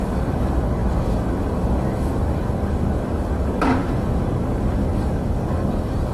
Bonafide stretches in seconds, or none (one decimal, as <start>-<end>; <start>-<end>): none